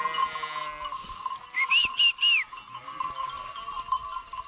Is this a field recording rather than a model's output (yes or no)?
yes